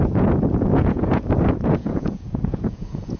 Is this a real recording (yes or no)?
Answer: no